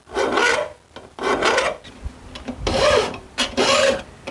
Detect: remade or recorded recorded